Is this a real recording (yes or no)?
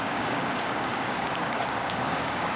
no